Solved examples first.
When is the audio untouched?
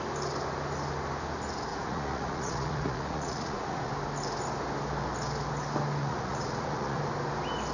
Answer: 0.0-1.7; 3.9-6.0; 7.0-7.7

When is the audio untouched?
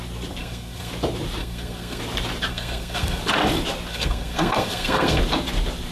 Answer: 0.0-0.4; 0.9-1.4; 2.0-2.5; 3.2-3.9; 5.2-5.9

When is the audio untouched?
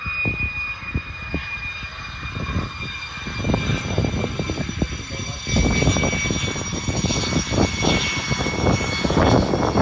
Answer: 0.0-9.8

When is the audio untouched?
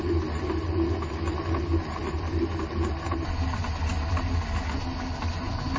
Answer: 0.0-5.8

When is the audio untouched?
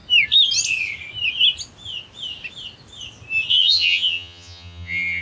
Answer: 0.0-3.5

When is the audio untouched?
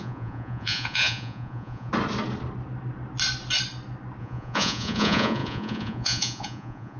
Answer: 1.9-4.2